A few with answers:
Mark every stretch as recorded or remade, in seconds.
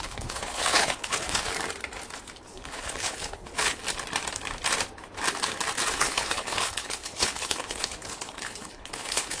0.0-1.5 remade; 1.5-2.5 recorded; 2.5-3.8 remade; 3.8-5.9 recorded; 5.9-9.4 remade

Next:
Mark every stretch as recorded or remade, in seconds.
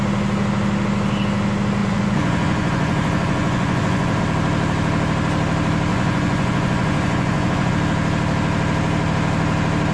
0.0-1.8 recorded; 1.8-4.2 remade; 4.2-5.9 recorded; 5.9-7.7 remade; 7.7-9.9 recorded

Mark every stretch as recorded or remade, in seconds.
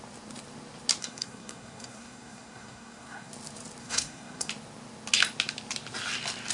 0.0-1.0 recorded; 1.0-3.3 remade; 3.3-3.8 recorded; 3.8-4.5 remade; 4.5-6.5 recorded